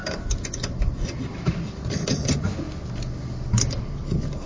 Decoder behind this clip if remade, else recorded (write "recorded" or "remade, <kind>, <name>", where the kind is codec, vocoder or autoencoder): recorded